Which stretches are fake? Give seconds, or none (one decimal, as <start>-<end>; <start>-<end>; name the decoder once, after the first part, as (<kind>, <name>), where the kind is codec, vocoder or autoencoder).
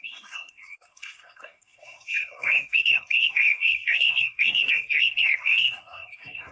0.0-6.5 (codec, SNAC)